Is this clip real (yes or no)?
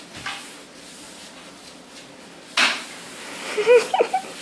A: yes